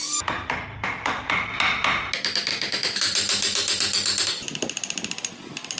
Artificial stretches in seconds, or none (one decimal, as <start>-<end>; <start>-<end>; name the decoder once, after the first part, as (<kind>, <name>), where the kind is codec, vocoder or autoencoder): 2.5-3.0 (autoencoder, DAC-VAE)